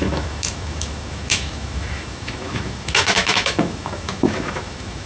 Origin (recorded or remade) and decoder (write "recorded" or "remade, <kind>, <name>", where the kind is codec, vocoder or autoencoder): remade, autoencoder, DAC-VAE